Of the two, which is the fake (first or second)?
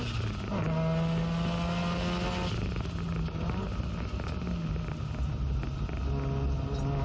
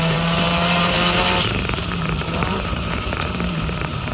second